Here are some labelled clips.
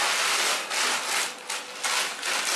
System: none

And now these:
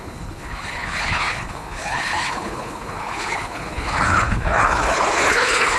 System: codec, HILCodec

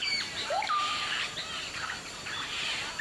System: vocoder, BigVGAN v2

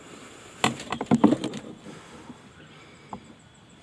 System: none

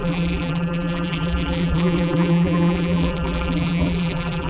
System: vocoder, BigVGAN v2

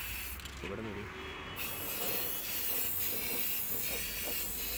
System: none